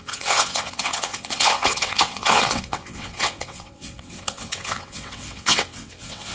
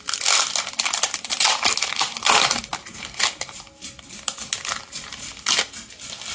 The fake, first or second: first